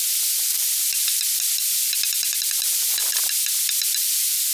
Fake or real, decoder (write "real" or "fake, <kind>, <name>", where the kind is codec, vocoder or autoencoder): real